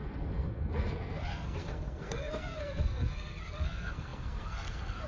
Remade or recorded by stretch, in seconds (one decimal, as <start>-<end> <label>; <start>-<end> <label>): 0.0-5.1 remade